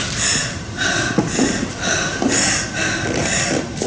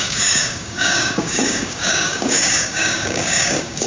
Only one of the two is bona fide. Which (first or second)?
first